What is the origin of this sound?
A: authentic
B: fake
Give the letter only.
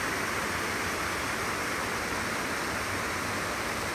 A